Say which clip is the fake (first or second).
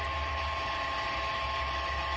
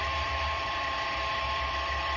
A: second